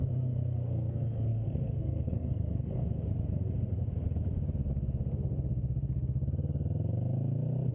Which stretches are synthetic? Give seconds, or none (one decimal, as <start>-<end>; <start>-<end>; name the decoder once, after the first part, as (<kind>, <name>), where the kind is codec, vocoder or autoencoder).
0.0-2.8 (codec, SNAC)